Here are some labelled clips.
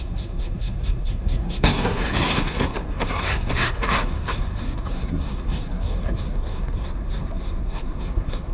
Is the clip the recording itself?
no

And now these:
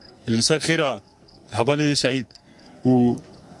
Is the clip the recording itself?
no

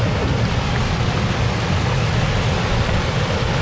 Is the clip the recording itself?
yes